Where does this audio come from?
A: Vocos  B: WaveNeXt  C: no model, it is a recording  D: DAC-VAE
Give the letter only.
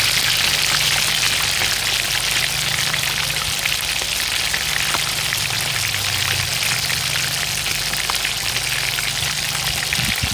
C